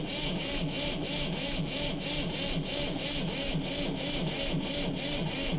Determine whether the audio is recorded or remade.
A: recorded